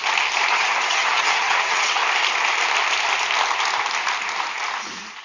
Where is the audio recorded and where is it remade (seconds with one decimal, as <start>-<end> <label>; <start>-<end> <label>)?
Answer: 0.0-0.5 recorded; 0.5-2.0 remade; 2.0-5.2 recorded